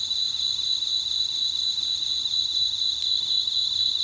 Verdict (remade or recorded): remade